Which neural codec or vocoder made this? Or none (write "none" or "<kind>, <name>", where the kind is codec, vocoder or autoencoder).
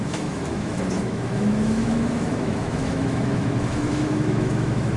autoencoder, DAC-VAE